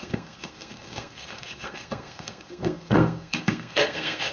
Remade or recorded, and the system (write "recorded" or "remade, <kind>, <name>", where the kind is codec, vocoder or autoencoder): remade, codec, SNAC